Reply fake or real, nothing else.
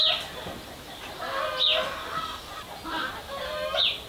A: real